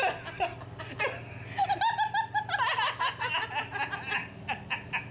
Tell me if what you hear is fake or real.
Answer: real